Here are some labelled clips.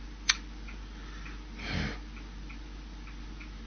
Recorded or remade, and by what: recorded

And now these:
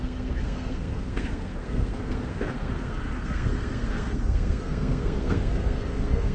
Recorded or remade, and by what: remade, codec, SNAC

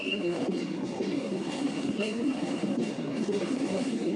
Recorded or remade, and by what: remade, codec, SNAC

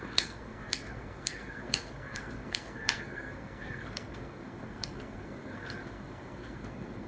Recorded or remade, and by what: remade, codec, SNAC